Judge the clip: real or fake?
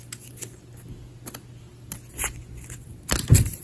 real